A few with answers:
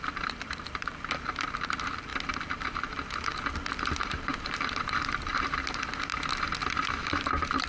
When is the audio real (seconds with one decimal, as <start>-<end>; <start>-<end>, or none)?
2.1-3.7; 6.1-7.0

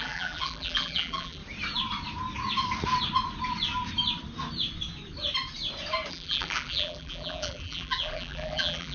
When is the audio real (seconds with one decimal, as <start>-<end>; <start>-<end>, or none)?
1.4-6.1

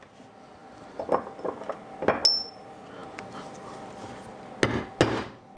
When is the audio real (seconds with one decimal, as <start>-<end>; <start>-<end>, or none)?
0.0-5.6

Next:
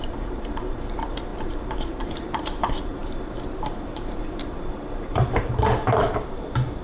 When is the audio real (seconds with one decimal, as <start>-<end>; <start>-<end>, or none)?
none